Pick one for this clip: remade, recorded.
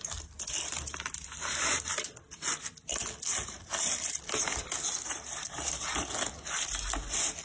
recorded